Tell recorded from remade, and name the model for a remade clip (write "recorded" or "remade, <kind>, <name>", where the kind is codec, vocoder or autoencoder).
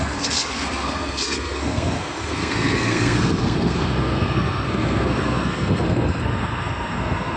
remade, codec, SNAC